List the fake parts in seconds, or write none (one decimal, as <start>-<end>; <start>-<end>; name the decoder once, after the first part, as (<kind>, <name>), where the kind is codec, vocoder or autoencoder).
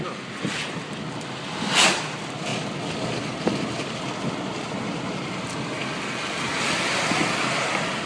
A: none